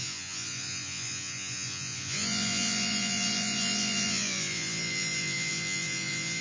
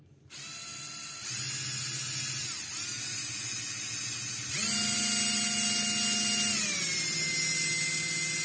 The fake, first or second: first